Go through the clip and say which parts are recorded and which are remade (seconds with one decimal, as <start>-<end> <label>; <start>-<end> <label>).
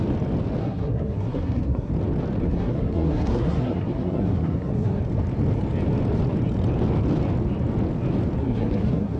0.0-0.6 recorded; 0.6-1.9 remade; 1.9-2.4 recorded; 2.4-5.0 remade; 5.0-8.4 recorded; 8.4-9.2 remade